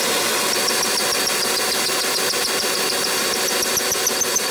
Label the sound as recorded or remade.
recorded